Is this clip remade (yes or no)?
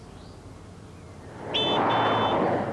no